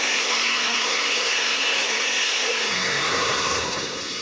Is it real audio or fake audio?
fake